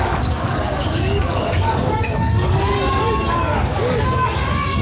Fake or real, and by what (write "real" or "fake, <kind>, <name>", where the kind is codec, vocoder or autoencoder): fake, codec, DAC